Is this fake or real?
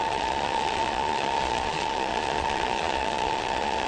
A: fake